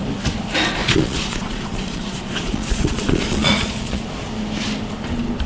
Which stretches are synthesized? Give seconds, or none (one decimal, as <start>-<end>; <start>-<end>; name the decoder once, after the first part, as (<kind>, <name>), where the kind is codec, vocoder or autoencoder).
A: 0.8-4.1 (vocoder, Vocos)